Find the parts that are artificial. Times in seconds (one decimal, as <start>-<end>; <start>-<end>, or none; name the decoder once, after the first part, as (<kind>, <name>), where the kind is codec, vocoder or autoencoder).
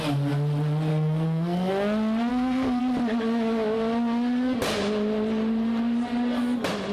0.9-1.7 (codec, SNAC); 2.3-2.8